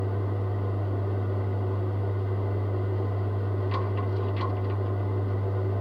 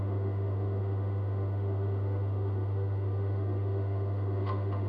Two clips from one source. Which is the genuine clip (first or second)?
first